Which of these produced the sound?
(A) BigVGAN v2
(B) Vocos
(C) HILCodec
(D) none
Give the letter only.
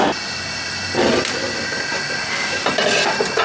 D